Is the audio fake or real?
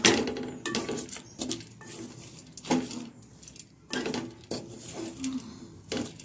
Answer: real